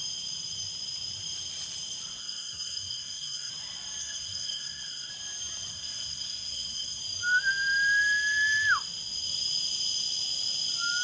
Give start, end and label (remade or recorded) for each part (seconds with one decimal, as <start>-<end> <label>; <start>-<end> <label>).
0.0-2.2 recorded; 2.2-3.5 remade; 3.5-4.0 recorded; 4.0-5.1 remade; 5.1-5.7 recorded; 5.7-7.0 remade; 7.0-11.0 recorded

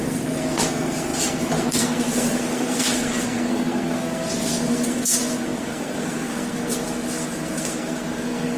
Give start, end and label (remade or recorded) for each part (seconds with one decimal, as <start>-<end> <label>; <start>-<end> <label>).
0.0-8.6 remade

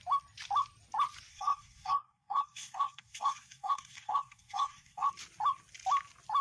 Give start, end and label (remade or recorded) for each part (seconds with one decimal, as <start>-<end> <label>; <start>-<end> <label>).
0.0-1.3 recorded; 1.3-5.1 remade; 5.1-6.4 recorded

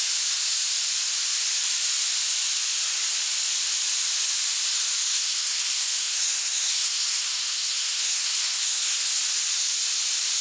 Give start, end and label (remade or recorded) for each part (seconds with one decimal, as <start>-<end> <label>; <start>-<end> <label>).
0.0-5.1 recorded; 5.1-9.1 remade; 9.1-10.4 recorded

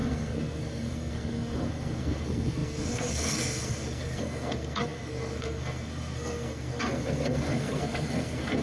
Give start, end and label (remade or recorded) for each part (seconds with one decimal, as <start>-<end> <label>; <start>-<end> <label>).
0.0-8.6 remade